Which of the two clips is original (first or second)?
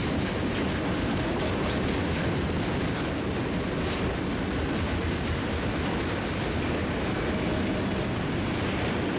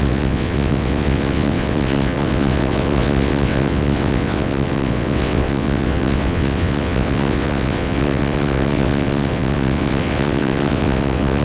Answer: first